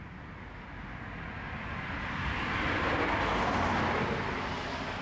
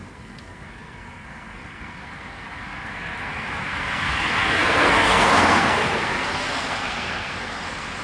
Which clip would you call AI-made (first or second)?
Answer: second